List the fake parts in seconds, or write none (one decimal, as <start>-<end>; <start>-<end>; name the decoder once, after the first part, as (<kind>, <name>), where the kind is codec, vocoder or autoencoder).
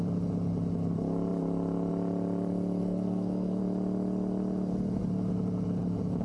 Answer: 2.8-3.6 (codec, SNAC)